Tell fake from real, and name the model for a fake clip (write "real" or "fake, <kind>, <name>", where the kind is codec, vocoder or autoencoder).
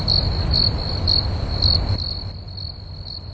real